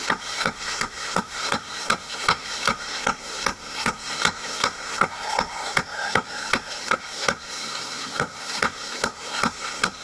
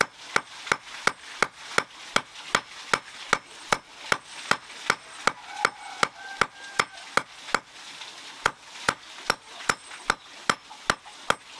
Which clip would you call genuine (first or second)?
second